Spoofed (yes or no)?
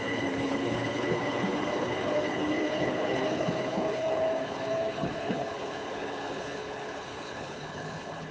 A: yes